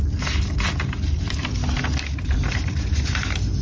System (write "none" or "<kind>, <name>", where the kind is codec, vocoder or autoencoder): none